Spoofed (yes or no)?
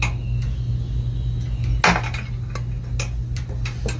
no